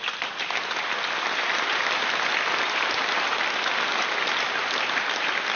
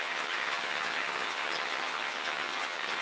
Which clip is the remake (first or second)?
second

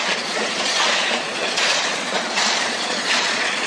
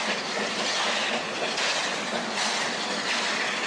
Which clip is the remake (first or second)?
first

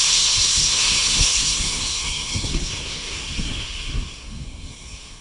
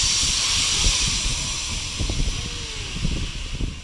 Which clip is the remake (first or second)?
first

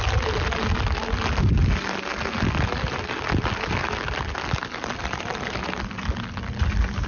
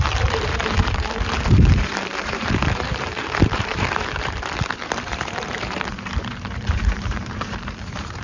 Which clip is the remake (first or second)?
second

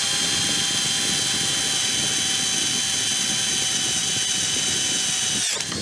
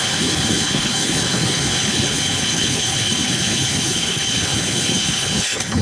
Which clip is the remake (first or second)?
second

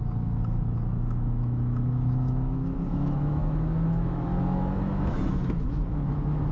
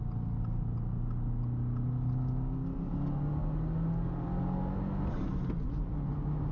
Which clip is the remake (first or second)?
first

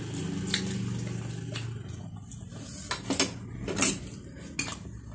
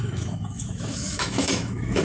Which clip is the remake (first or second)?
second